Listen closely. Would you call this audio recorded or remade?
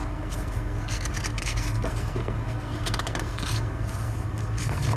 remade